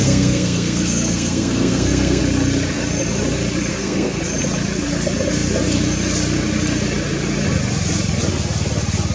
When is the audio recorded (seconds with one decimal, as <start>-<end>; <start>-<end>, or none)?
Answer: 2.2-3.7; 4.2-9.1